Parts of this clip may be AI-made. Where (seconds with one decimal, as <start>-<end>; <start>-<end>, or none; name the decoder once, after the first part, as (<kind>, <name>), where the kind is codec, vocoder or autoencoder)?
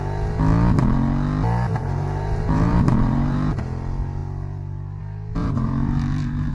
1.7-3.5 (vocoder, BigVGAN v2); 5.4-6.5